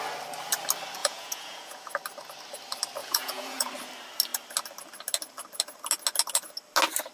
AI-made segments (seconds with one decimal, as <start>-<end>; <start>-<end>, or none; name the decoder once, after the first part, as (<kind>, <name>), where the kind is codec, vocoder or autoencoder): 1.0-1.9 (vocoder, Vocos); 3.0-3.7